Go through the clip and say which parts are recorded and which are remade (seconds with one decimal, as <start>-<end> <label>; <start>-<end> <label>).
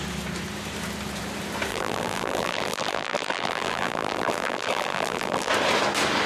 0.0-1.7 recorded; 1.7-5.5 remade; 5.5-6.3 recorded